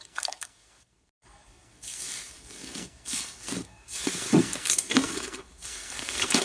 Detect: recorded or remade remade